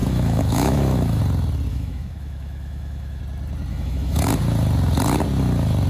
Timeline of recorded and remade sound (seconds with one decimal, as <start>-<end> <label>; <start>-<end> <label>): 0.0-1.2 remade; 1.2-1.7 recorded; 1.7-3.2 remade; 3.2-3.7 recorded; 3.7-4.3 remade; 4.3-5.9 recorded